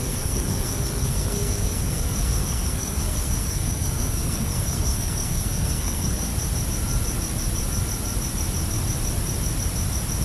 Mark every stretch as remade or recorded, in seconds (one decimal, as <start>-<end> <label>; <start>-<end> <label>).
0.0-6.3 remade; 6.3-10.2 recorded